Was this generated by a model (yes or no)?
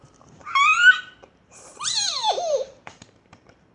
yes